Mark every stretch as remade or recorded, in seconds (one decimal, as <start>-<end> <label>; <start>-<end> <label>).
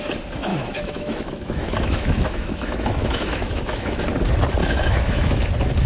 0.0-0.5 recorded; 0.5-4.0 remade; 4.0-4.6 recorded; 4.6-5.4 remade; 5.4-5.9 recorded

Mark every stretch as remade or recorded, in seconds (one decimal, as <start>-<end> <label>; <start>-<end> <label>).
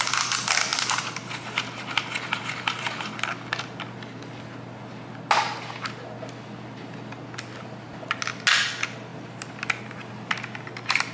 0.0-11.1 recorded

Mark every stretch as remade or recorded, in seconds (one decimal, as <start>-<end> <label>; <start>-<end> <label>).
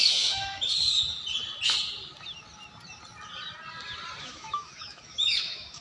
0.0-0.7 remade; 0.7-4.2 recorded; 4.2-5.8 remade